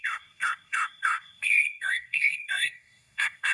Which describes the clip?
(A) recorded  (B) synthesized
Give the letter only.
B